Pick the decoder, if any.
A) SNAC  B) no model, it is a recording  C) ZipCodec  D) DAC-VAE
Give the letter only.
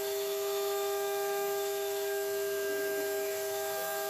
D